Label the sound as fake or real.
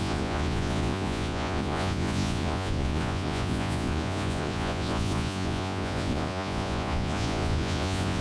fake